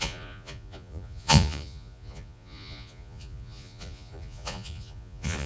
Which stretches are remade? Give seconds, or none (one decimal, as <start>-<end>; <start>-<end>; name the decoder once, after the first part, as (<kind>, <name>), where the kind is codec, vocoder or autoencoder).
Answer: 0.0-5.5 (vocoder, Vocos)